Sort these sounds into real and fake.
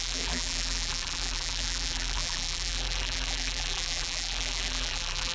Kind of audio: fake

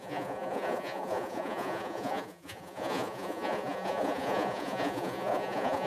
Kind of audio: fake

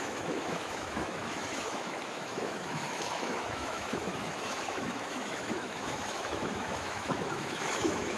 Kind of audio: fake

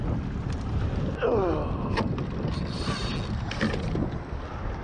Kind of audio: real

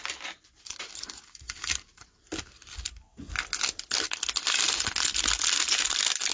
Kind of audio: real